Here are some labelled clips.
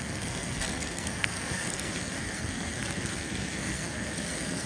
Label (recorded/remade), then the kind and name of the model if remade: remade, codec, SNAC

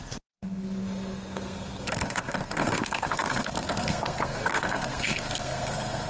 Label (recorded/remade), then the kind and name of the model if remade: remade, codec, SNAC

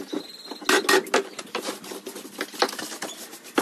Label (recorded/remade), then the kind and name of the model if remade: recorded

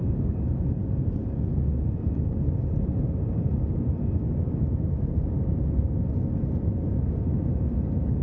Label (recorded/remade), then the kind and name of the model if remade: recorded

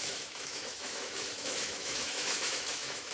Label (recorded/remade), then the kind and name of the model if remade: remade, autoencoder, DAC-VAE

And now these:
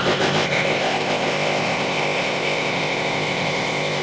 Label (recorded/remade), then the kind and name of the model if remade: remade, codec, ZipCodec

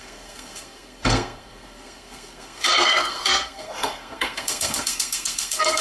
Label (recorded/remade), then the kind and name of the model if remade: remade, codec, SNAC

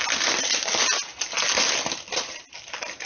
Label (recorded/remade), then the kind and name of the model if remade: recorded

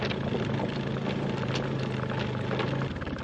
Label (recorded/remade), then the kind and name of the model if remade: recorded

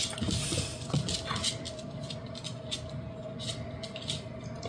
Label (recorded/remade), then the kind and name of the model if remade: recorded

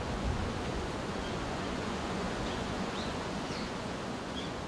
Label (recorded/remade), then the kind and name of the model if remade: remade, vocoder, Vocos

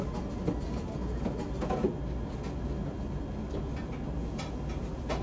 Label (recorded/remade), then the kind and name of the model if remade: recorded